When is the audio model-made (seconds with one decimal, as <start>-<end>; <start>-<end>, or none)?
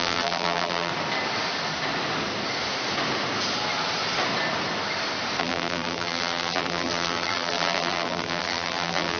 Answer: 0.0-0.9; 5.4-9.2